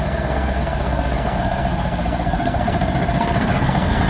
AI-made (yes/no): yes